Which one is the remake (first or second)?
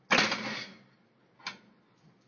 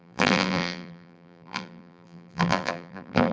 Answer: second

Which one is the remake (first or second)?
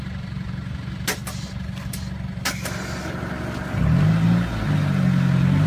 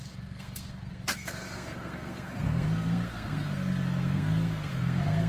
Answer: second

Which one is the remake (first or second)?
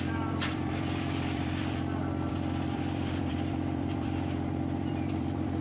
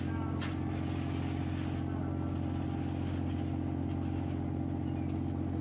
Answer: first